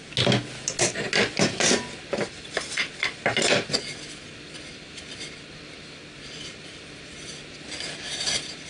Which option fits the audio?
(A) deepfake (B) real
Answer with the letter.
B